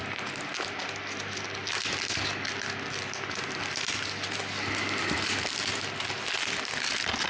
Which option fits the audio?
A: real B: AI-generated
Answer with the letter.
A